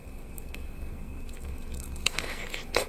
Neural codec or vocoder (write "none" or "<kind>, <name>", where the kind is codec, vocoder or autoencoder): codec, SNAC